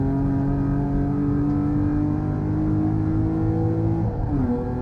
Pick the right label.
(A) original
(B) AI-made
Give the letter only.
A